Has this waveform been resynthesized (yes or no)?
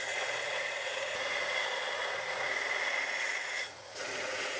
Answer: yes